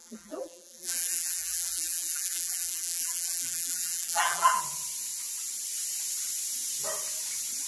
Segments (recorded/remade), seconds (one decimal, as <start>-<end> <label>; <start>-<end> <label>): 0.0-4.6 remade; 4.6-7.7 recorded